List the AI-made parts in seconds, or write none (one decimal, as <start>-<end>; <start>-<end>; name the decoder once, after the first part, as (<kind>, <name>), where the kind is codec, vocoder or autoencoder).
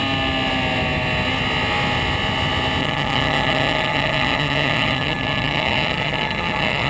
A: 2.8-6.9 (vocoder, HiFi-GAN)